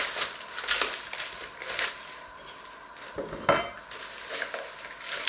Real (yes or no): yes